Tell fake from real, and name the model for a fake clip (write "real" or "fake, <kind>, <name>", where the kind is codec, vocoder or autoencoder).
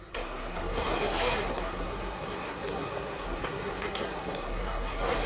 fake, codec, SNAC